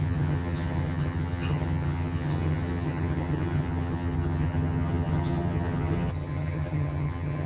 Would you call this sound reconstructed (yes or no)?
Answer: yes